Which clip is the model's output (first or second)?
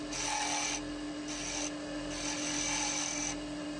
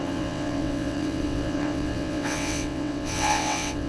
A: second